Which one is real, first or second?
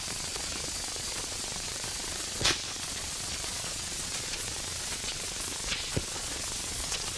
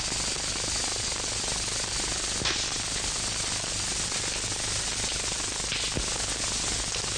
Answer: second